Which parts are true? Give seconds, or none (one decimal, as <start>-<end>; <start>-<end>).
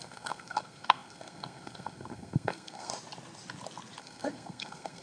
2.9-4.0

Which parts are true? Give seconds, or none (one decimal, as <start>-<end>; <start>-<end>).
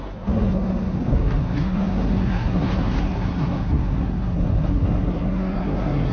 none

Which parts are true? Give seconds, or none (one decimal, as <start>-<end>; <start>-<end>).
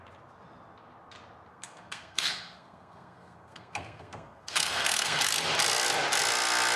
0.0-1.5; 5.2-6.8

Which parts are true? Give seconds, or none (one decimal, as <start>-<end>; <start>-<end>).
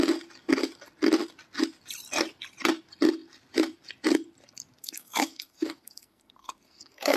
0.0-4.8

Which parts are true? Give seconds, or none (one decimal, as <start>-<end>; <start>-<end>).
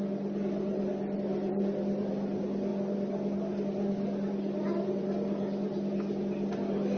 0.0-7.0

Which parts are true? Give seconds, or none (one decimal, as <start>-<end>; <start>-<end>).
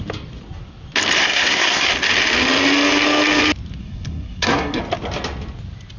0.0-1.2; 1.9-3.8; 4.8-6.0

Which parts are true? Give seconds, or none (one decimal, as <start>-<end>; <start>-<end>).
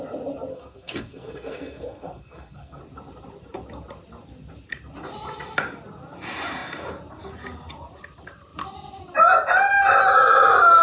0.0-0.5; 2.8-10.8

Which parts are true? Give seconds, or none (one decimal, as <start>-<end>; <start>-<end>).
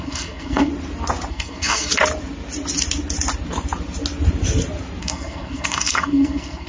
0.7-1.3; 1.9-5.0